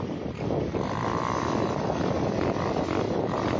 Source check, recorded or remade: recorded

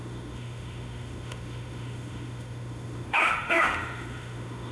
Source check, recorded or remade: remade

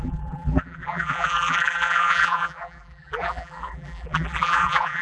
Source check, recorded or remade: remade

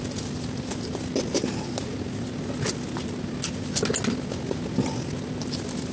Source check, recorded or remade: recorded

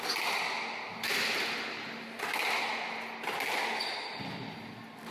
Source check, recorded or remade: recorded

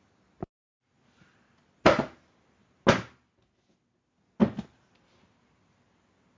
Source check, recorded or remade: recorded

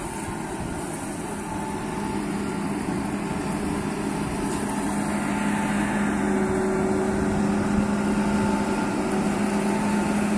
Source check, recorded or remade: recorded